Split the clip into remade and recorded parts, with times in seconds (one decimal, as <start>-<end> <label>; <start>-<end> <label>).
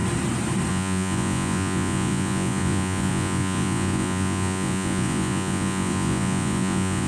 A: 0.0-0.7 recorded; 0.7-7.1 remade